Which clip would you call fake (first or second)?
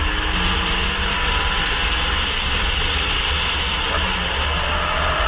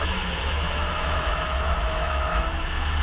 second